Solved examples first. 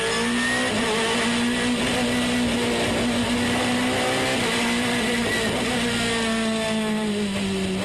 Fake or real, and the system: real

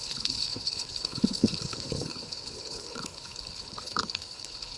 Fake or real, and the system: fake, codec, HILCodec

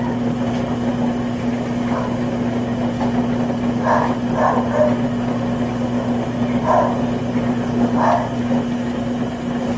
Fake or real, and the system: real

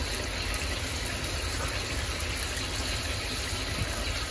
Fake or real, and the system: real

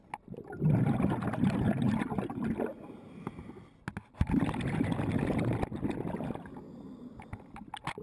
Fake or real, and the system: real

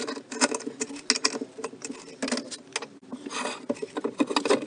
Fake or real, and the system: real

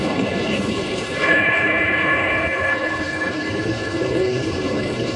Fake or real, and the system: fake, codec, HILCodec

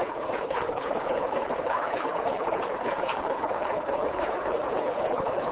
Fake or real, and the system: fake, codec, HILCodec